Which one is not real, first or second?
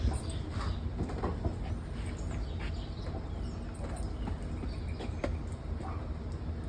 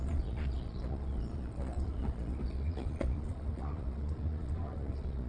second